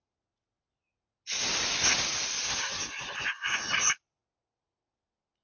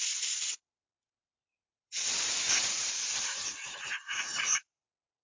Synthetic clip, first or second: second